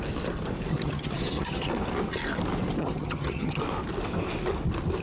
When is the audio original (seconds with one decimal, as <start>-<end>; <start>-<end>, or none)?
0.0-0.7; 1.7-2.8; 3.6-5.0